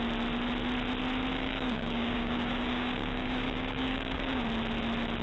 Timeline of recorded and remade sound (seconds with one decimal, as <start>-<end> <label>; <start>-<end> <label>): 0.0-1.3 recorded; 1.3-4.4 remade; 4.4-5.2 recorded